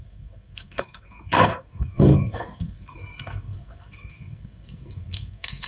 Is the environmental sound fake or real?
fake